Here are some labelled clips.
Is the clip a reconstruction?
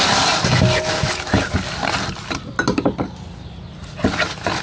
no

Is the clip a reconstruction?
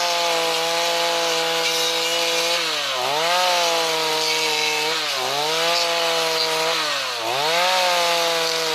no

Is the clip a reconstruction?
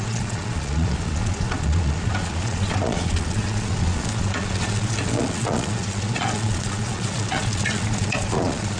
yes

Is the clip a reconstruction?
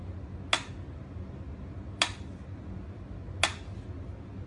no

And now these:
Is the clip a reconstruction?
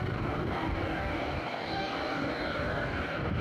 yes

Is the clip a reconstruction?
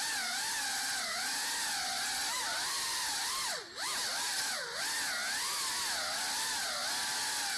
no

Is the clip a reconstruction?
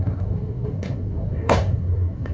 yes